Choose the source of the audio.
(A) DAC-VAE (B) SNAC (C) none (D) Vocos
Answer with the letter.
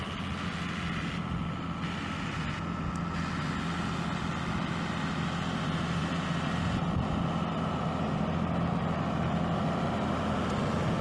C